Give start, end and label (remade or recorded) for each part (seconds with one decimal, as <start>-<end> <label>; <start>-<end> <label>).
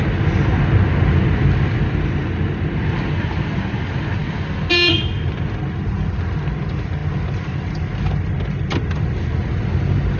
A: 0.0-10.2 recorded